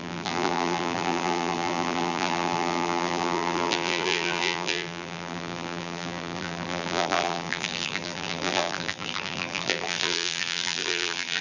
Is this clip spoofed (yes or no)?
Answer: yes